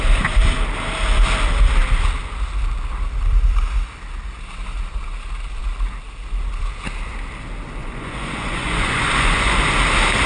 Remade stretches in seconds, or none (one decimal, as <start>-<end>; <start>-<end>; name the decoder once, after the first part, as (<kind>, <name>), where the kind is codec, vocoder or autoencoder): 7.8-9.6 (vocoder, Vocos)